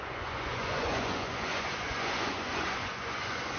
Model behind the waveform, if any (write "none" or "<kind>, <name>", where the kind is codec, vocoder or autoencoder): vocoder, Vocos